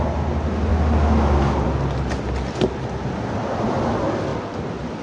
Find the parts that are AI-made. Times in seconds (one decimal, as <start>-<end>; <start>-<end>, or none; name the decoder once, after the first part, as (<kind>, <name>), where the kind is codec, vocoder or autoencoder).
none